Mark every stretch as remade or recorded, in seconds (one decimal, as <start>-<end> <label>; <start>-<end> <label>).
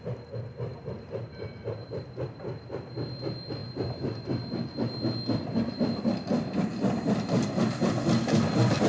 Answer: 0.0-8.9 recorded